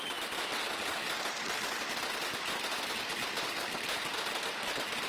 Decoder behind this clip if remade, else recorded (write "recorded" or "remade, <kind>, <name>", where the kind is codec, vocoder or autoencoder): recorded